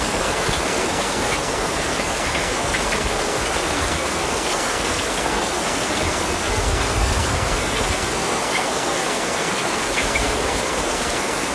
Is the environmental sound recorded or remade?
remade